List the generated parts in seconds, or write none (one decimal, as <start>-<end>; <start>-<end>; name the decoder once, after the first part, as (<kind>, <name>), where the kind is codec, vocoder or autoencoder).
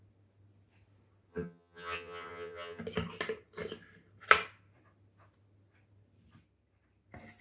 1.3-2.8 (vocoder, HiFi-GAN)